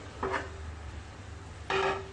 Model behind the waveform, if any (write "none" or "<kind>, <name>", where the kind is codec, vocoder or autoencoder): vocoder, BigVGAN v2